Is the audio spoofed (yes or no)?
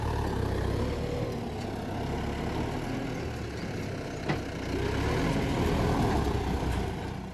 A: no